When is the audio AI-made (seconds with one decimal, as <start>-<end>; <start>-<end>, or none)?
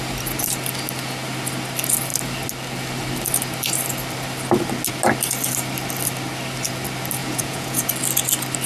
7.2-7.9